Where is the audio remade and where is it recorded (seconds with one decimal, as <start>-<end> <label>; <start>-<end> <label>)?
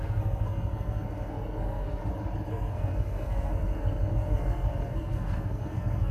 0.0-2.0 remade; 2.0-2.5 recorded; 2.5-6.1 remade